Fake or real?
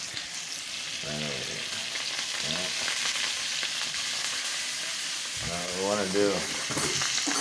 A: real